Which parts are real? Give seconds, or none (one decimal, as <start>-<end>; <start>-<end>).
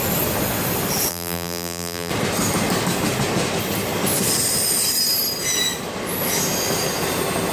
0.0-1.1; 2.1-7.5